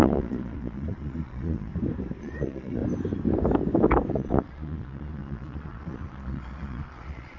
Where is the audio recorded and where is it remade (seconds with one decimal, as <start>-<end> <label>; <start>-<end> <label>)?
0.0-1.7 remade; 1.7-2.2 recorded; 2.2-2.8 remade; 2.8-4.1 recorded; 4.1-7.4 remade